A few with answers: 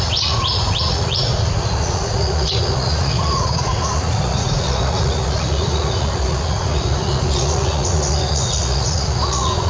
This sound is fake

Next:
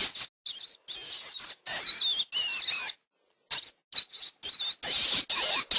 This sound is real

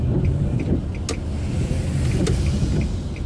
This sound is real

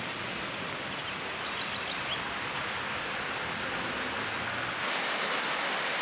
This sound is real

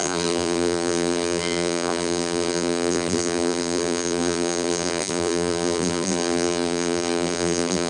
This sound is fake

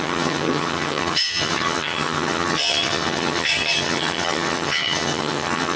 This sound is fake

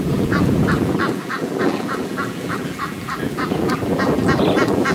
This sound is fake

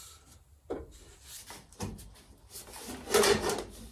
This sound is real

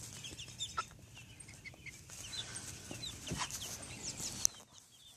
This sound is real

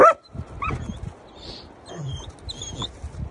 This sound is real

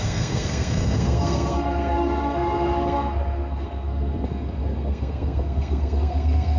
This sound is fake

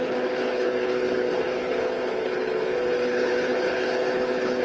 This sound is fake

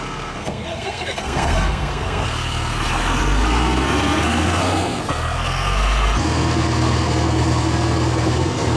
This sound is fake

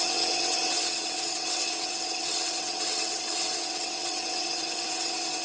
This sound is fake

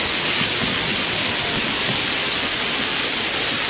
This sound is real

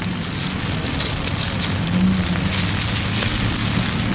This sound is real